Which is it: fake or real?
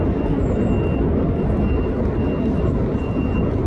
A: real